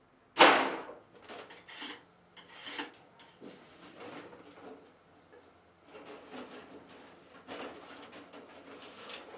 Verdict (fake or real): real